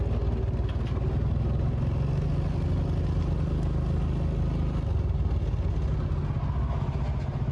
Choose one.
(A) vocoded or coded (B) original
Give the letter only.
B